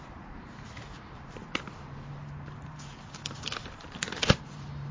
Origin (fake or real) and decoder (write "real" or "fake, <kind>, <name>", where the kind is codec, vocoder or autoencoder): fake, vocoder, BigVGAN v2